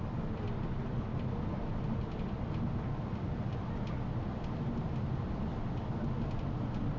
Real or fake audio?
real